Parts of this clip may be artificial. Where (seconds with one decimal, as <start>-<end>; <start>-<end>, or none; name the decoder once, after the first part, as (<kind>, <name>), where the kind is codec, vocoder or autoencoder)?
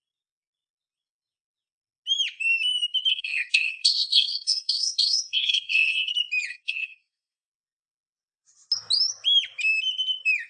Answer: 3.1-6.1 (codec, SNAC); 6.5-7.5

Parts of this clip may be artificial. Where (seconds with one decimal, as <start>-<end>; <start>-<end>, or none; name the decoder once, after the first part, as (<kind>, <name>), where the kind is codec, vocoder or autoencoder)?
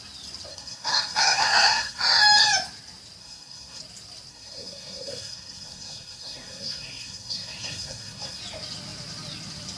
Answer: 0.5-2.0 (codec, SNAC); 3.2-3.8; 4.3-8.4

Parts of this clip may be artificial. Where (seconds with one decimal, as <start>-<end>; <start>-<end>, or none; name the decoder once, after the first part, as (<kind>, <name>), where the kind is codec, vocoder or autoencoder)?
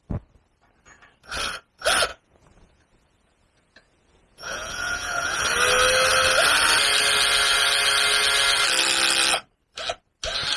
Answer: 2.1-5.4 (vocoder, Vocos)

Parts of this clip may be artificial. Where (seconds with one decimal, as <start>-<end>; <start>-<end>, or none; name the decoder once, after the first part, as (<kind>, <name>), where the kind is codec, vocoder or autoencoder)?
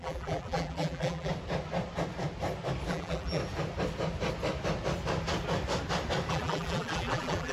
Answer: 0.0-1.3 (vocoder, BigVGAN v2); 2.9-3.4; 6.3-7.5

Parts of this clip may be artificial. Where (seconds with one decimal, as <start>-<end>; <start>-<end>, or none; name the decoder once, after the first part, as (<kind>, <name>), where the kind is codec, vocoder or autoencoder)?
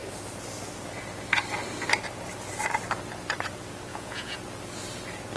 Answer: 3.9-4.4 (vocoder, Vocos)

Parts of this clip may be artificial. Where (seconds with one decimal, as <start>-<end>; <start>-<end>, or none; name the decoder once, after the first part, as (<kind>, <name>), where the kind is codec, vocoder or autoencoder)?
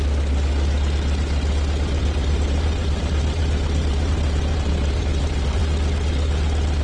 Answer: 2.0-5.6 (vocoder, BigVGAN v2)